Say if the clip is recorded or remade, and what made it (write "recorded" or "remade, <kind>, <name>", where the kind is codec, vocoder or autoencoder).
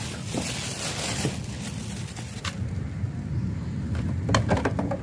recorded